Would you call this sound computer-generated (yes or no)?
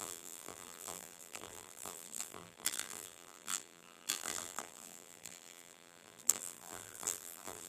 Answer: yes